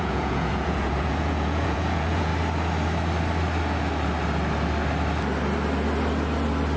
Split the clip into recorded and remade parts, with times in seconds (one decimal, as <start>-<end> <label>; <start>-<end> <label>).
0.0-2.3 remade; 2.3-6.8 recorded